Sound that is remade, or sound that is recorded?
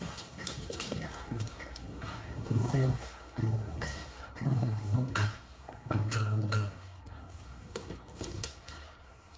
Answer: remade